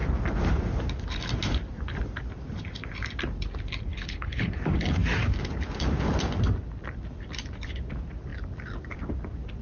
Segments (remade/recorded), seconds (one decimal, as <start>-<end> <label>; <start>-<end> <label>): 0.0-3.9 recorded; 3.9-4.5 remade; 4.5-9.6 recorded